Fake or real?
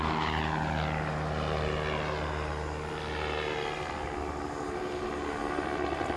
real